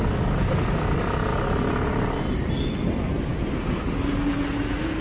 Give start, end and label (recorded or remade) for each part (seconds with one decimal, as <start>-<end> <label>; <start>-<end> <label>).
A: 0.0-5.0 recorded